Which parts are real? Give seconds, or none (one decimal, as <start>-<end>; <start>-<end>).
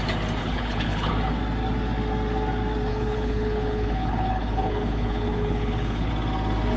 0.0-0.4; 1.1-2.9; 6.1-6.8